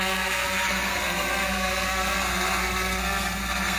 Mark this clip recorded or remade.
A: remade